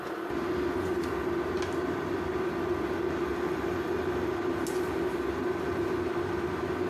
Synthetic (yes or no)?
no